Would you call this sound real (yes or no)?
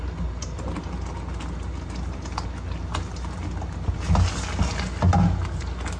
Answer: yes